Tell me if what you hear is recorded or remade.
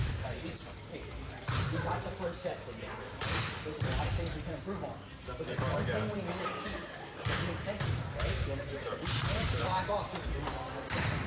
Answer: recorded